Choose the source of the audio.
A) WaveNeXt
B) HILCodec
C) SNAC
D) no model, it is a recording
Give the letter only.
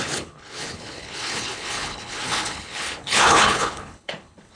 B